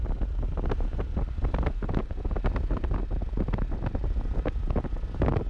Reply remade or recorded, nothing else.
recorded